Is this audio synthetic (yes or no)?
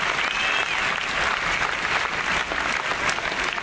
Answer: no